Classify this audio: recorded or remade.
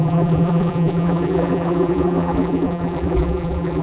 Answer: remade